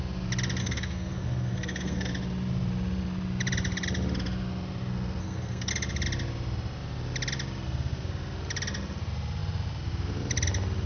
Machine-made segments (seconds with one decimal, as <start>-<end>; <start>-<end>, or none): 0.6-2.1; 5.2-5.7